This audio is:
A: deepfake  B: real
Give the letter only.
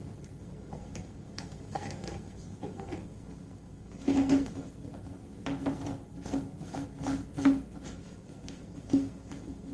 A